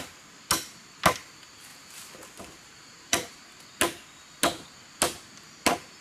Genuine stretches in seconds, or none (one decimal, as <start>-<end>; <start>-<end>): 0.0-1.7; 3.5-6.0